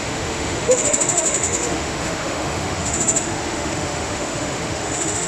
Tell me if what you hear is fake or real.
fake